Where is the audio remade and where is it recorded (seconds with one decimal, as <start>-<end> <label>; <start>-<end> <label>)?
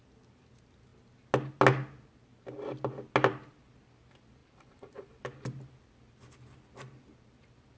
0.0-4.4 recorded; 4.4-5.1 remade; 5.1-7.8 recorded